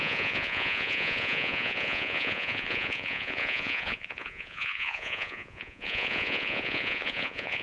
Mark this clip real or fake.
fake